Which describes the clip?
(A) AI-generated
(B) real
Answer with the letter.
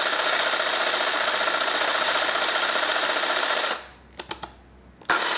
B